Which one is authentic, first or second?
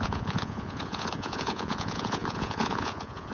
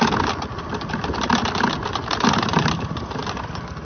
second